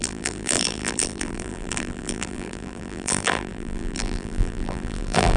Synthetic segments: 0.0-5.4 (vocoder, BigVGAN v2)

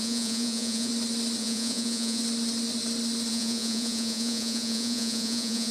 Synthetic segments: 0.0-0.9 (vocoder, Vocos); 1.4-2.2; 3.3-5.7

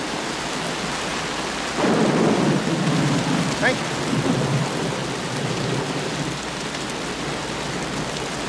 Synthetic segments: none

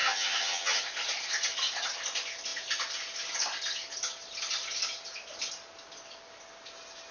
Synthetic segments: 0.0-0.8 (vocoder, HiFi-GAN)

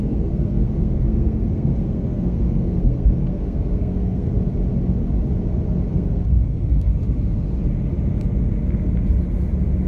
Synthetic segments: 0.0-4.3 (codec, SNAC); 5.9-6.9

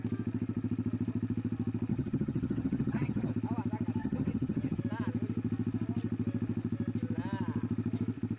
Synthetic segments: 1.9-3.3 (vocoder, HiFi-GAN); 4.0-4.8